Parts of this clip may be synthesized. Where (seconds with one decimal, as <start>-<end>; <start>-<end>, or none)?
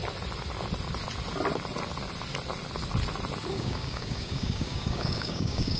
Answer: 3.5-5.8